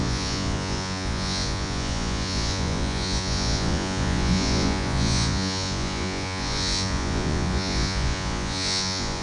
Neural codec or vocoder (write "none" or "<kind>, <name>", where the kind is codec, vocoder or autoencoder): vocoder, Vocos